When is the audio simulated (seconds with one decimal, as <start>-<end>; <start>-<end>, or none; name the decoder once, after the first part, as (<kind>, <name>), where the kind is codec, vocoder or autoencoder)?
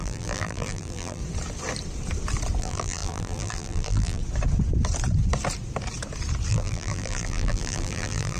0.0-1.2 (vocoder, BigVGAN v2); 2.6-4.2; 6.5-8.4